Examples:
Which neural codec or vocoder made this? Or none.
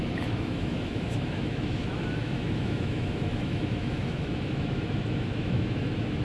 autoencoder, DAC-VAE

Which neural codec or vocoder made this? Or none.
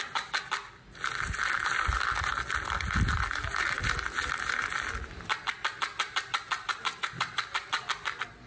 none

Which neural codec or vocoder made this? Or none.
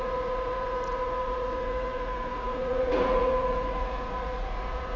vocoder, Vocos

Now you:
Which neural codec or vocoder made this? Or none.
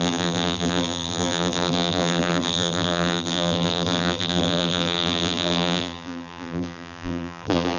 vocoder, BigVGAN v2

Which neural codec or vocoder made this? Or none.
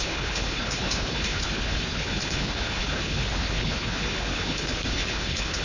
codec, HILCodec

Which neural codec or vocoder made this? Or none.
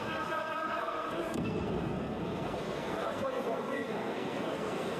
codec, SNAC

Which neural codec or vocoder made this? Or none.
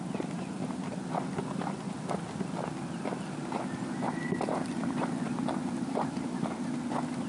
none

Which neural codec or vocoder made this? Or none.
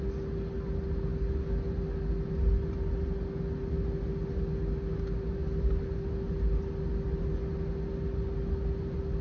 none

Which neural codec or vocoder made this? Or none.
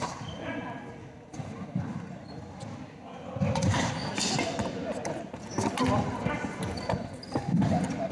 none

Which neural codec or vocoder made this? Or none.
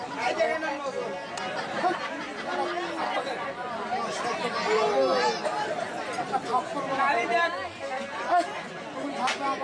none